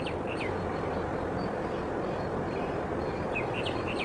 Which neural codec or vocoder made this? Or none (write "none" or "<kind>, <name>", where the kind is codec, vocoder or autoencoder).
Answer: none